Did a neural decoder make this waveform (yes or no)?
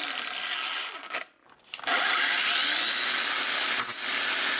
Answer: no